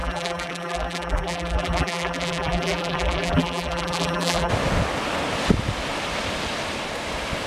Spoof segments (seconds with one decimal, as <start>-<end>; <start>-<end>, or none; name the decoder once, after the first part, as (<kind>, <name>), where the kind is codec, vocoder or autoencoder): 0.0-4.5 (vocoder, BigVGAN v2)